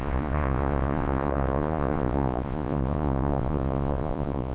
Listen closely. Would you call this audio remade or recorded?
remade